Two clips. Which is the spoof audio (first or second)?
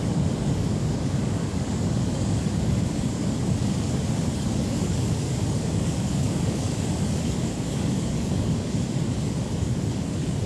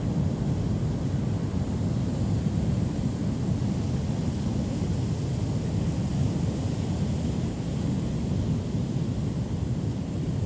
first